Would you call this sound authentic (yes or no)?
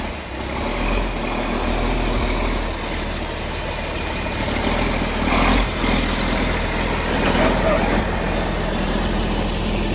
yes